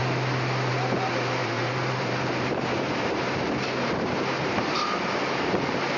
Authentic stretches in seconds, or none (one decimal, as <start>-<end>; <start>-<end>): 0.0-1.4; 4.5-6.0